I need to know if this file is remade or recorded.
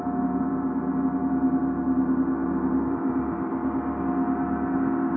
recorded